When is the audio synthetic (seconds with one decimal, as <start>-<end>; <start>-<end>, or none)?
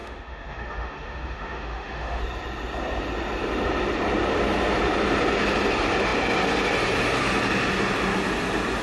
0.0-2.2